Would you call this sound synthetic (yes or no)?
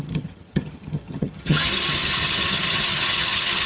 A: yes